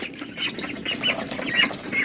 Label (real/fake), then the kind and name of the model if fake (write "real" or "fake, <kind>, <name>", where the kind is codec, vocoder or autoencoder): real